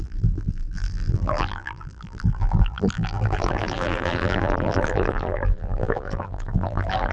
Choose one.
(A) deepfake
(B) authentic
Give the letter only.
A